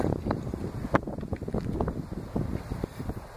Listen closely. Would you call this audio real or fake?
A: real